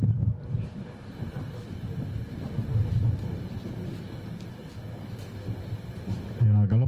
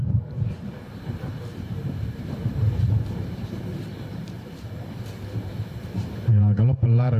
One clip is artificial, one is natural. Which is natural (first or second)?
first